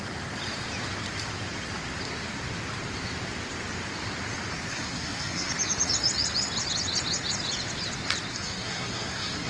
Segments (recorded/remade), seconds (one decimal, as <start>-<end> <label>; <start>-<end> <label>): 0.0-4.7 recorded; 4.7-5.5 remade; 5.5-8.3 recorded; 8.3-9.5 remade